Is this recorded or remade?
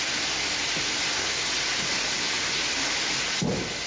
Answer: recorded